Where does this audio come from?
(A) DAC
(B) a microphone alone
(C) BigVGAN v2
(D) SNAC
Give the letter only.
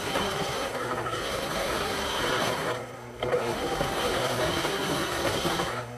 D